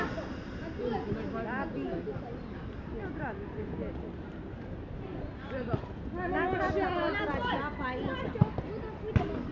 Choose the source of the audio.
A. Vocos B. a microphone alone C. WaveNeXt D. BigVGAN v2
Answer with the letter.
B